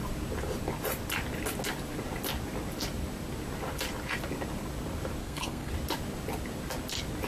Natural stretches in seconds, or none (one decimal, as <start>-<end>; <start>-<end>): 0.0-5.2; 5.7-7.3